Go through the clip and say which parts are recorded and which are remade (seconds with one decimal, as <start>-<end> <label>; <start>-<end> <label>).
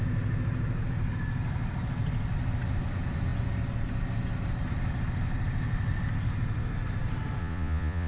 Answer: 0.0-7.4 recorded; 7.4-8.1 remade